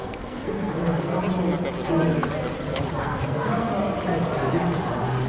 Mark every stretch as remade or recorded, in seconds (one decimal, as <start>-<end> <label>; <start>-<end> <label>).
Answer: 0.0-1.2 remade; 1.2-3.0 recorded; 3.0-3.7 remade; 3.7-5.3 recorded

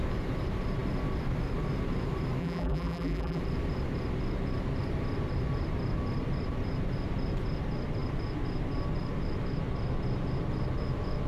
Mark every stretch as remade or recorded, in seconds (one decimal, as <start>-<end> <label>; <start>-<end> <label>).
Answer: 0.0-2.4 recorded; 2.4-3.4 remade; 3.4-11.3 recorded

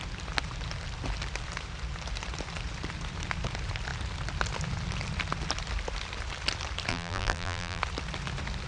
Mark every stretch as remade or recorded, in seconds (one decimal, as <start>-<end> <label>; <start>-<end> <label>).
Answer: 0.0-6.9 recorded; 6.9-7.8 remade; 7.8-8.7 recorded